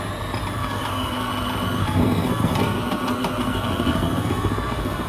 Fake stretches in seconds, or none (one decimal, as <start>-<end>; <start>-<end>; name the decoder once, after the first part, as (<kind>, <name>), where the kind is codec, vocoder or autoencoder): 0.6-1.3 (codec, SNAC); 1.8-5.1